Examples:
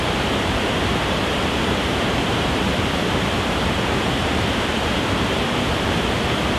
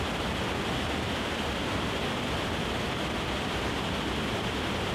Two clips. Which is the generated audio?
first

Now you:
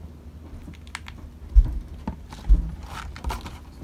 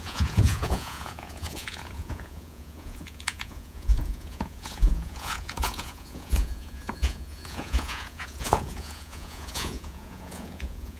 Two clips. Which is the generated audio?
second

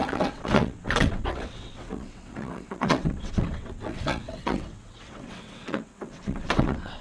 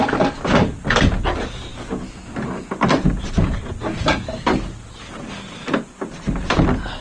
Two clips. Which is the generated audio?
first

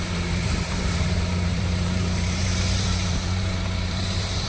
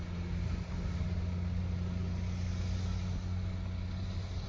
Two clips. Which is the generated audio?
first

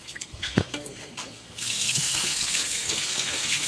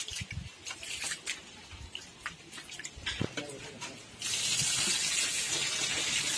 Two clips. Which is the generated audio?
first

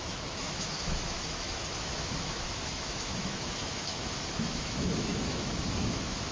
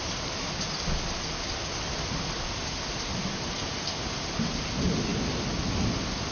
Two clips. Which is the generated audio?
first